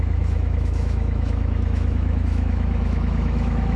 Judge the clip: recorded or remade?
remade